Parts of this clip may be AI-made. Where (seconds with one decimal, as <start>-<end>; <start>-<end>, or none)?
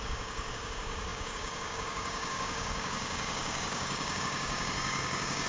0.0-5.5